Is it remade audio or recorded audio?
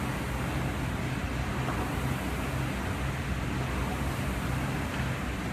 recorded